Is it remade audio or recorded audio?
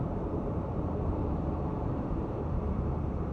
remade